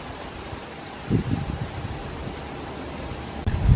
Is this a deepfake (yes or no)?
no